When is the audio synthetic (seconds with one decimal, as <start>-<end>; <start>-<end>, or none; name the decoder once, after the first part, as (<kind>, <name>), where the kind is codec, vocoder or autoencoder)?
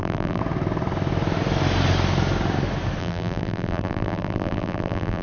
0.0-0.4 (vocoder, BigVGAN v2); 3.0-5.2